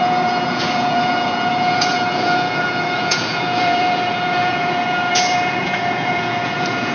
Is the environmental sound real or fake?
fake